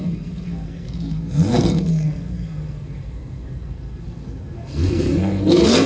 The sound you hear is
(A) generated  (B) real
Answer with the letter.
A